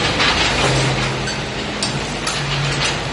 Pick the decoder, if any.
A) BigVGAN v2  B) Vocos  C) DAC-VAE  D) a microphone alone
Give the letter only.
D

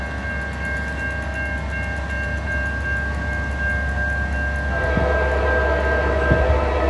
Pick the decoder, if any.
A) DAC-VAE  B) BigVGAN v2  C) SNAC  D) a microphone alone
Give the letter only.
D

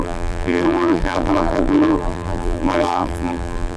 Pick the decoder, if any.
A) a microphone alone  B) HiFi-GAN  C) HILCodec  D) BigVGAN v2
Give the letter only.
D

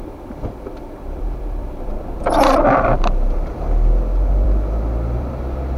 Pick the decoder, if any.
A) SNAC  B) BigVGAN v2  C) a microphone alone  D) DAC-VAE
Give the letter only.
B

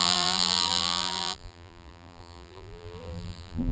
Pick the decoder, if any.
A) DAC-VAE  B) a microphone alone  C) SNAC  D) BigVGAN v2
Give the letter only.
D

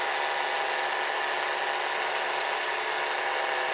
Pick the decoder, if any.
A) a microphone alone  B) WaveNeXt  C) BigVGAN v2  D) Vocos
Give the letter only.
A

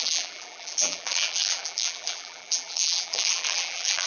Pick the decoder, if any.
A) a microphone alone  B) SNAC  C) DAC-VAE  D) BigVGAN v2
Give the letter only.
D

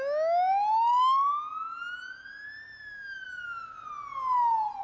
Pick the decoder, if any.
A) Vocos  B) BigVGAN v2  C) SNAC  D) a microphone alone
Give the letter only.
D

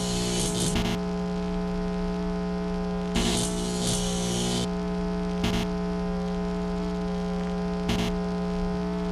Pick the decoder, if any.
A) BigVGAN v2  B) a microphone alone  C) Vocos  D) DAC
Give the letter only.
B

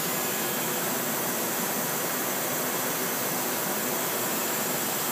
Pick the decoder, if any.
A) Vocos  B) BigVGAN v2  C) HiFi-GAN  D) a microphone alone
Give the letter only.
D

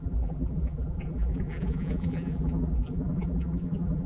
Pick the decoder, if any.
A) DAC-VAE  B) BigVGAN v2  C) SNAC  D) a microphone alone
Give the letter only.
B